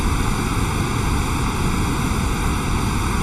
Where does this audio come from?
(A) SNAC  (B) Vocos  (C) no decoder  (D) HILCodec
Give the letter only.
C